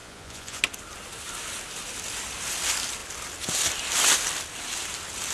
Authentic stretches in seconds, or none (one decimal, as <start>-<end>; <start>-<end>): 0.6-5.3